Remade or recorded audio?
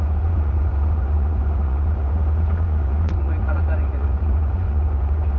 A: remade